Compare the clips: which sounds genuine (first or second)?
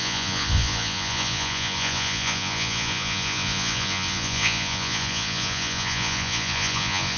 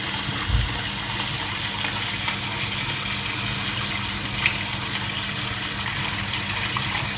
second